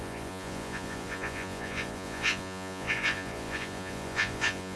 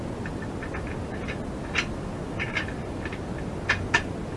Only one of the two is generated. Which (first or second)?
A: first